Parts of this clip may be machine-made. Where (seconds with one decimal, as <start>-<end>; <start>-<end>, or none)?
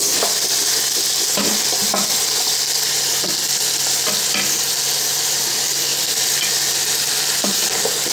none